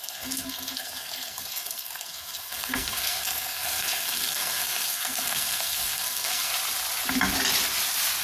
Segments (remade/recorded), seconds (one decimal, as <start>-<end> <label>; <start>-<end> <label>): 0.0-6.5 remade; 6.5-8.2 recorded